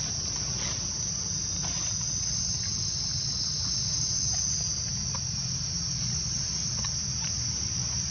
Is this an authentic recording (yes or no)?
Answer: yes